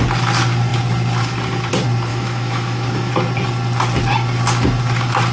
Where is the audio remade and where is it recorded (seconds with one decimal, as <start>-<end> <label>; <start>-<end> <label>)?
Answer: 0.0-2.1 recorded; 2.1-3.1 remade; 3.1-5.3 recorded